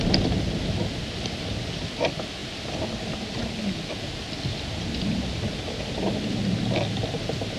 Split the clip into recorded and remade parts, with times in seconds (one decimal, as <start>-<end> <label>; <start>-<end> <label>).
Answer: 0.0-7.6 recorded